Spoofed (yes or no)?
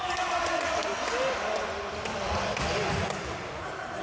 no